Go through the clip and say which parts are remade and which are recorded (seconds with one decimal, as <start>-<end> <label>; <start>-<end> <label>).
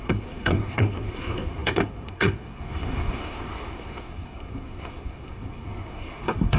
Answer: 0.0-6.6 remade